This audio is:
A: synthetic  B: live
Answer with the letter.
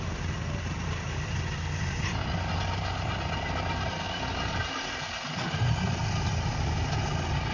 B